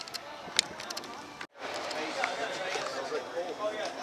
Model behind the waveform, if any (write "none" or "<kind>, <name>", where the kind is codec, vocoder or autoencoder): none